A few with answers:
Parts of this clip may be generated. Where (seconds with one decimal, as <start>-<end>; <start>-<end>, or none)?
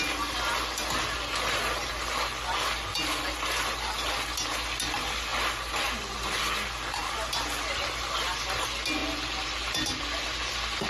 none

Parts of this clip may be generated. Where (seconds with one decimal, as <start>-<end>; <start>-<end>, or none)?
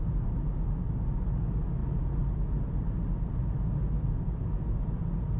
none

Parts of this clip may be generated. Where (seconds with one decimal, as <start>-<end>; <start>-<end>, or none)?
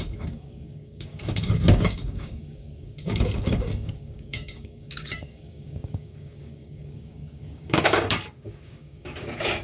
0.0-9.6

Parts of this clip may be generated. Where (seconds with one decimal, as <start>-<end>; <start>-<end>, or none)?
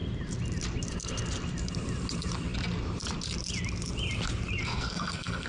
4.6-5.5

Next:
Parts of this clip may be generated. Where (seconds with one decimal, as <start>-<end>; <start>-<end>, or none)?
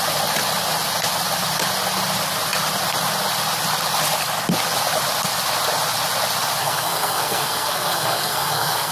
6.6-8.9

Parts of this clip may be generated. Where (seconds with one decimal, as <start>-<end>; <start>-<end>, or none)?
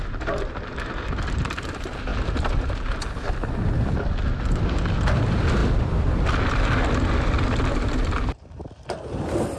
5.6-6.4